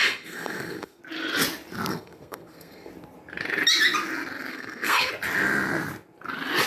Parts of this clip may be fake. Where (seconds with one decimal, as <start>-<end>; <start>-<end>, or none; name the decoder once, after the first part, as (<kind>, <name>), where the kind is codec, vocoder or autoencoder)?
0.0-1.0 (codec, SNAC); 1.9-2.9; 4.5-5.1